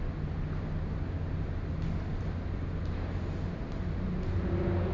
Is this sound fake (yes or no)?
no